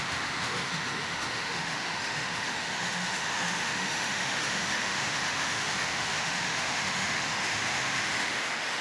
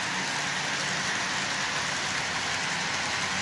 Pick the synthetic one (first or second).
first